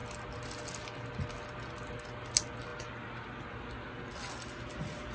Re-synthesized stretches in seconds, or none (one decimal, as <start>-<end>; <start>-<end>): none